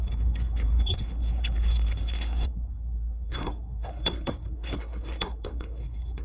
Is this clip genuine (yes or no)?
no